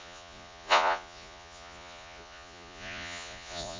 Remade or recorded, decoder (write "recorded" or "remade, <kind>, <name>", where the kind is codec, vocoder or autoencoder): remade, vocoder, Vocos